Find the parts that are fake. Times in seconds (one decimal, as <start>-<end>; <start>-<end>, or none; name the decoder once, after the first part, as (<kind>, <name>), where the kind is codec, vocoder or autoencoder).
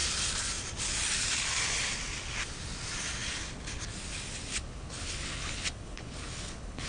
4.5-6.9 (codec, HILCodec)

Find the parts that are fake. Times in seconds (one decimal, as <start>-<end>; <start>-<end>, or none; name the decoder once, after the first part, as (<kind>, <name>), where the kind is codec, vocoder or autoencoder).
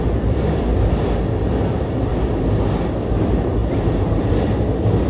0.0-0.7 (vocoder, BigVGAN v2); 1.7-2.1; 2.7-5.1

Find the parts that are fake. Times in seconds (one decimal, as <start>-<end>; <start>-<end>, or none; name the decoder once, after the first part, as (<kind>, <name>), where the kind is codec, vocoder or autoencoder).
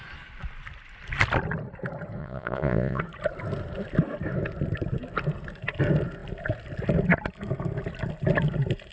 2.2-3.0 (vocoder, Vocos)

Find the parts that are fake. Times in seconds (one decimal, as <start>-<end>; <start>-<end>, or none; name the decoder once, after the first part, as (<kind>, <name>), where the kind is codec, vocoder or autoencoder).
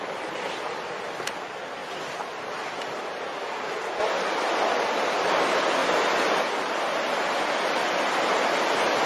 none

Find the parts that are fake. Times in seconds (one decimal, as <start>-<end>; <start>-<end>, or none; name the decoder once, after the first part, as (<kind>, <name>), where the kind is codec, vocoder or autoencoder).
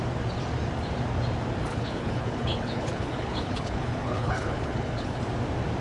1.7-5.2 (codec, HILCodec)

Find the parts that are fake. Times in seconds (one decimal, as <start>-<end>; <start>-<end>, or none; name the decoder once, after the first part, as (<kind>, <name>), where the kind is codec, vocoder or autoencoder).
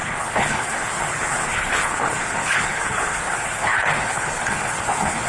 0.0-5.3 (codec, HILCodec)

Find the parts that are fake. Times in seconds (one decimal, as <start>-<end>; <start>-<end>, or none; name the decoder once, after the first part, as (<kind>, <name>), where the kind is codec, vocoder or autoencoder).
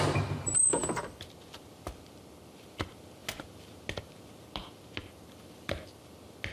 5.0-6.0 (vocoder, BigVGAN v2)